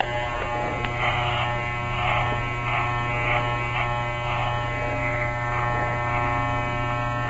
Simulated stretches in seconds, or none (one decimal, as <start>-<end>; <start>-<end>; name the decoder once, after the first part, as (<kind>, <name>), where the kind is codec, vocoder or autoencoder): none